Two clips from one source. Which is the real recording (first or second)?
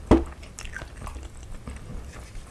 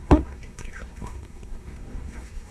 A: first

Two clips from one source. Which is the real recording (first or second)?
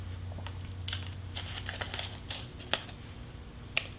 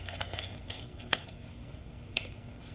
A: first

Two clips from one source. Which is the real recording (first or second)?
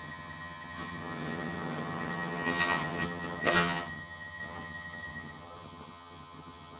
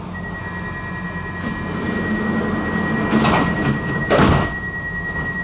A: second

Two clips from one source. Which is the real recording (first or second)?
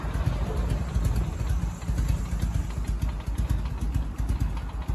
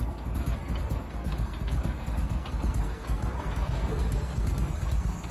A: first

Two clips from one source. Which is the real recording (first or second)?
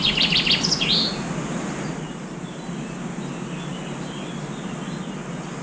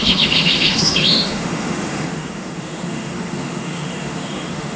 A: first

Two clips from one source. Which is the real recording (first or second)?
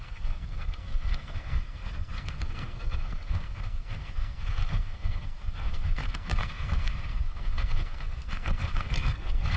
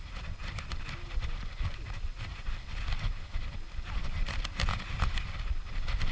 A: second